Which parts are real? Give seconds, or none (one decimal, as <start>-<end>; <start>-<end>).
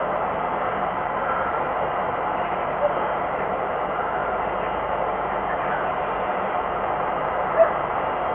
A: none